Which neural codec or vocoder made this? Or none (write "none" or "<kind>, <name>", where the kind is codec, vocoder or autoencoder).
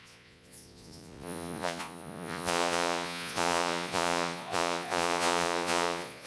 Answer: vocoder, Vocos